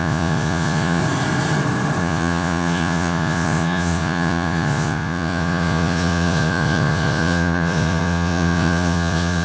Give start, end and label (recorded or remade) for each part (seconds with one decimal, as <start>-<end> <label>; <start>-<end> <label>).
0.0-1.0 remade; 1.0-2.0 recorded; 2.0-9.4 remade